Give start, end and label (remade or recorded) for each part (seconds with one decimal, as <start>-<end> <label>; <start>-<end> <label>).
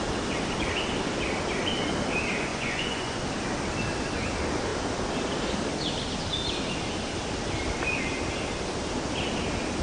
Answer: 0.0-2.5 recorded; 2.5-3.2 remade; 3.2-9.8 recorded